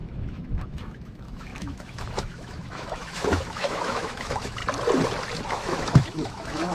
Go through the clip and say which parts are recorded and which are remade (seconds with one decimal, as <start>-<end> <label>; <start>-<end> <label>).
0.0-4.6 remade; 4.6-5.5 recorded; 5.5-6.7 remade